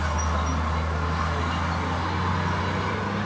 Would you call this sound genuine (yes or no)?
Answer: yes